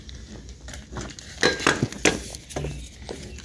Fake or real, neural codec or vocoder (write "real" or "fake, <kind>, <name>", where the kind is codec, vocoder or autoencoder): real